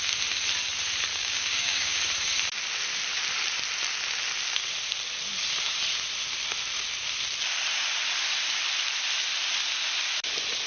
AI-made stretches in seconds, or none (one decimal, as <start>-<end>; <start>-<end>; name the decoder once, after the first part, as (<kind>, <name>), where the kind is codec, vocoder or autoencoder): 1.1-2.0 (codec, DAC)